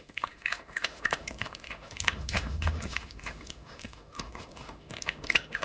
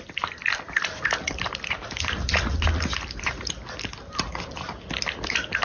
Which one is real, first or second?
second